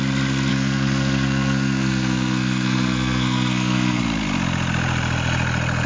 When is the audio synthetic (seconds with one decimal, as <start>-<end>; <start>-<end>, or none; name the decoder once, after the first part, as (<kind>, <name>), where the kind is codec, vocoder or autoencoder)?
0.5-4.0 (codec, SNAC)